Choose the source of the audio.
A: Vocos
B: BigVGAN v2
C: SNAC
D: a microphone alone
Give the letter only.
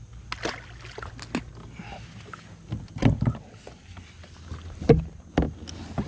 D